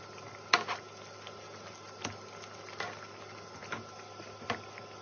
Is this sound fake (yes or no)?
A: no